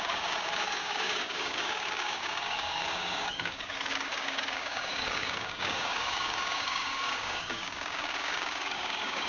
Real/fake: fake